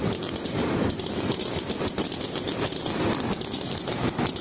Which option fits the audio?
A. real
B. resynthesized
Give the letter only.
A